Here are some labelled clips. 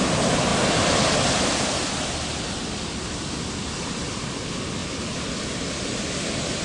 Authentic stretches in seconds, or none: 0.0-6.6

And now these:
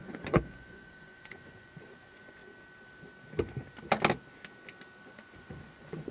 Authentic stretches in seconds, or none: 2.4-5.0

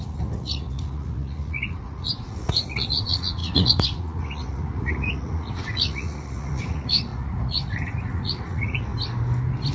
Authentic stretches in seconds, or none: 8.9-9.7

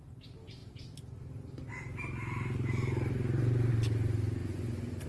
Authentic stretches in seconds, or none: 0.0-4.4